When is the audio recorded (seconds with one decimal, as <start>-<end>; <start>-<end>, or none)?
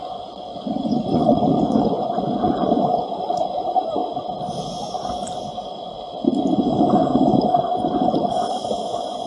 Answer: 4.0-8.7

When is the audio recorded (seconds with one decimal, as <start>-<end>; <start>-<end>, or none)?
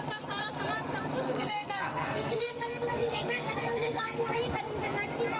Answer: 0.0-1.2; 4.4-5.4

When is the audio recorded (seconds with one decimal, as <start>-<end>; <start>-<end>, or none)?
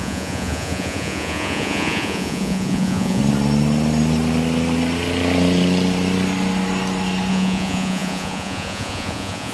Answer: 3.2-7.3